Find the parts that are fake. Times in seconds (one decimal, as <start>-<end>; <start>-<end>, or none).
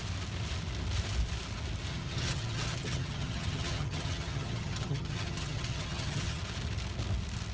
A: 1.9-6.4